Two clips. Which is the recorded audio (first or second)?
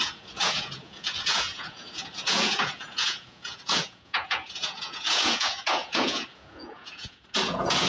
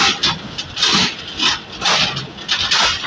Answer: second